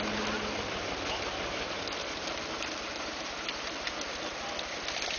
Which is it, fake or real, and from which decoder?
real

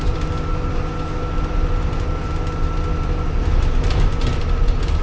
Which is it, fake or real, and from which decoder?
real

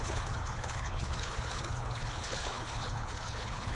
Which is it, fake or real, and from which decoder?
fake, codec, HILCodec